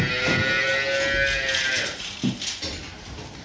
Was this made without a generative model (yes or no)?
yes